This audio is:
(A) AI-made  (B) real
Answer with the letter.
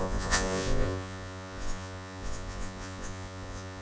A